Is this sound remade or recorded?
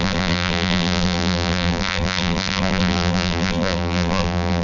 remade